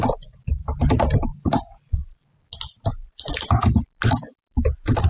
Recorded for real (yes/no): yes